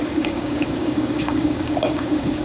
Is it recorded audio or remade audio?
remade